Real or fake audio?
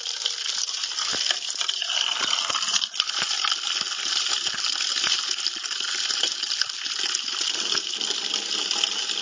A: real